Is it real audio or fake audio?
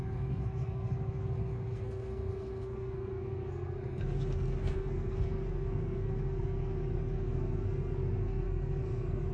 fake